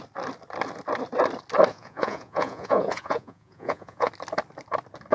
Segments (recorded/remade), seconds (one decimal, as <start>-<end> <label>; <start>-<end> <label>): 0.0-1.7 recorded; 1.7-4.1 remade; 4.1-5.1 recorded